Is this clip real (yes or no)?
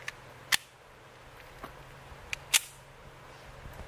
yes